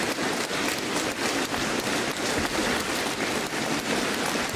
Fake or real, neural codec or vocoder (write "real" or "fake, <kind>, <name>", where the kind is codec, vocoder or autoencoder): fake, vocoder, BigVGAN v2